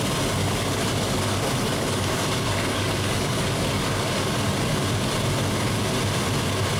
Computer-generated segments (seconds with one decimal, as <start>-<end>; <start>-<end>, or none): 0.4-4.5